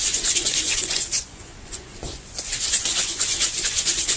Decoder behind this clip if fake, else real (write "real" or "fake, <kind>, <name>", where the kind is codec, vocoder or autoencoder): fake, vocoder, Vocos